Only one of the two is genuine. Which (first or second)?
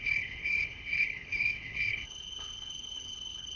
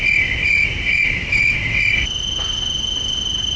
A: second